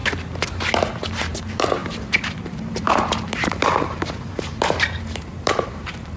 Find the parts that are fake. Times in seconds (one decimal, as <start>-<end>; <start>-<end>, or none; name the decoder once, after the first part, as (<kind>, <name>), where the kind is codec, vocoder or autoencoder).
1.2-6.2 (vocoder, BigVGAN v2)